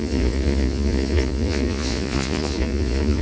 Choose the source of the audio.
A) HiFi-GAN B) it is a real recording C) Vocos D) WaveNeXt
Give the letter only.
C